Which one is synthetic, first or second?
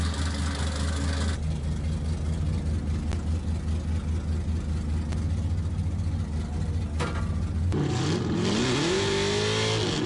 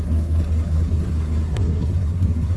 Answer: second